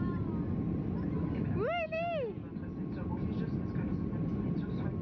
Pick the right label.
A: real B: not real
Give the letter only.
A